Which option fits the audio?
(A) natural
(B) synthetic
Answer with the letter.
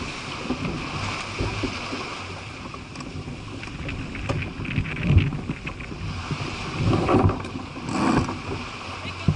A